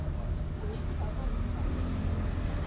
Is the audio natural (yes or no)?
yes